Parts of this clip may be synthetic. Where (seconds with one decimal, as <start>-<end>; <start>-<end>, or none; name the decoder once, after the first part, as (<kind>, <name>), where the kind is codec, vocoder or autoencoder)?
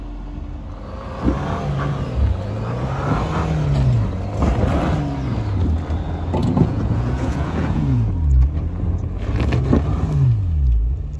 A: 6.4-8.1 (vocoder, Vocos)